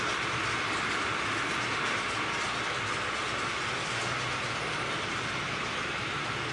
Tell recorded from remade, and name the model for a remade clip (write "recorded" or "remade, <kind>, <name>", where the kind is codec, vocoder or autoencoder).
recorded